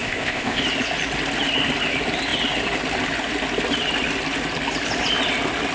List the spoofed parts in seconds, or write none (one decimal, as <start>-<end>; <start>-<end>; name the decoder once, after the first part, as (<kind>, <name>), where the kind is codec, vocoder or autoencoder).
0.0-0.6 (codec, ZipCodec)